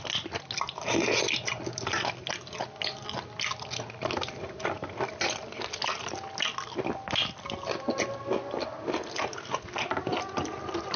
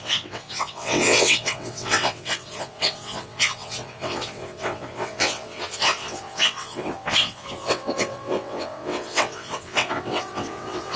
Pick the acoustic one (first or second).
first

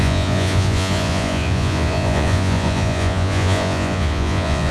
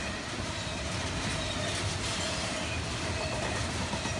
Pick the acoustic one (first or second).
second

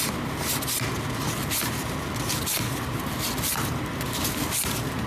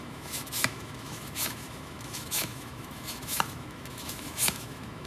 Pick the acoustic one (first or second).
first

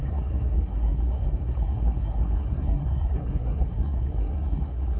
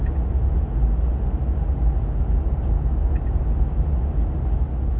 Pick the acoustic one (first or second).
second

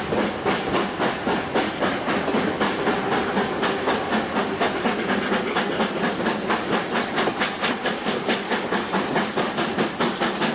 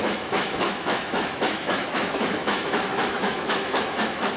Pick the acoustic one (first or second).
first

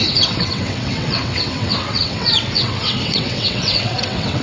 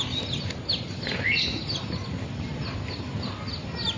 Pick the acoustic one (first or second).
second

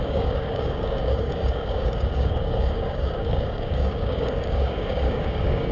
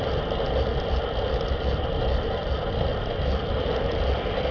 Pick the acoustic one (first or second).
second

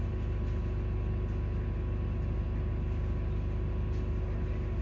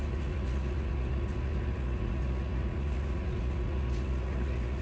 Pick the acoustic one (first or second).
first